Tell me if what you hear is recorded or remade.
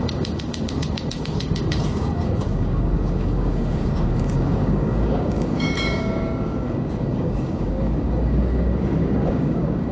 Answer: remade